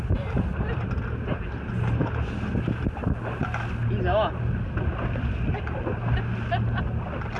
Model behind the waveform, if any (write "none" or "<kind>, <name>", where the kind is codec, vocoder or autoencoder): none